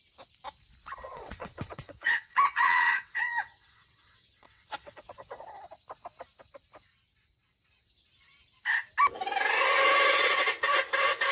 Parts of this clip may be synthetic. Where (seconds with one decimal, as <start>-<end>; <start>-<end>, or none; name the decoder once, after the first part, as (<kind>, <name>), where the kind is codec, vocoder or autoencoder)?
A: 1.1-5.4 (vocoder, WaveNeXt)